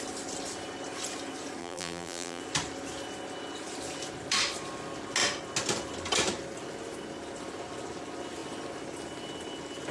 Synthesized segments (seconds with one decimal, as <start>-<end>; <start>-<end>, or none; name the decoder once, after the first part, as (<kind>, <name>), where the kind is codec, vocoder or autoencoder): 1.6-2.4 (vocoder, BigVGAN v2)